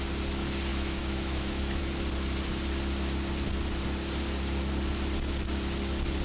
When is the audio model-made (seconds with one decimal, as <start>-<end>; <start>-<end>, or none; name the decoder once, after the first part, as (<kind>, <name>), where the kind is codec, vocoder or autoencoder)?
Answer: 0.7-1.8 (autoencoder, DAC-VAE)